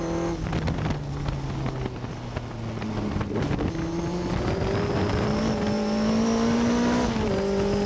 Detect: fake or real real